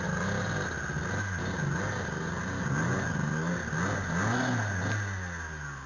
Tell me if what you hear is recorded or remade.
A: recorded